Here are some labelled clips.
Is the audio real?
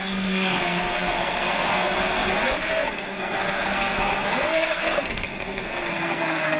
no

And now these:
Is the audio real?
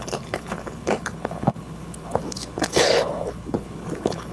no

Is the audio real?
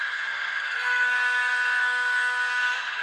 no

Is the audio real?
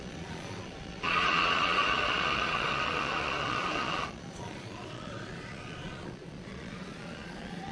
no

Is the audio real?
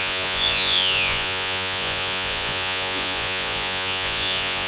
no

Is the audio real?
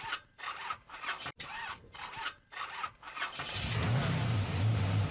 no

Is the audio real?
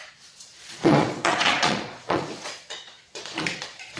no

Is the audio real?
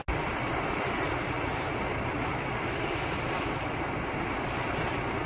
yes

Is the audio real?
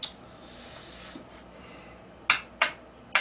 yes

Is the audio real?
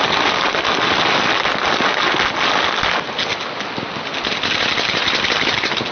yes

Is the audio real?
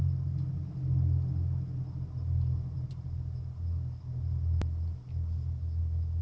yes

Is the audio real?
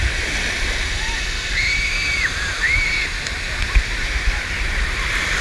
no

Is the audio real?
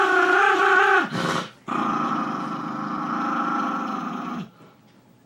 yes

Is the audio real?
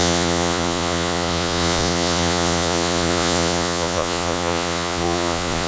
no